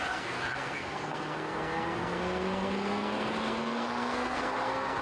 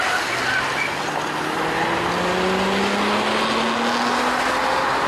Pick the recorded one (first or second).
second